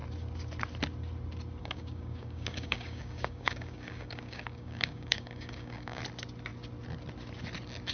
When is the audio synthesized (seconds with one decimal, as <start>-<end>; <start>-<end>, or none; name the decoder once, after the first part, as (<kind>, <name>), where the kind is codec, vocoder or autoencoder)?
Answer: 1.6-6.0 (codec, DAC)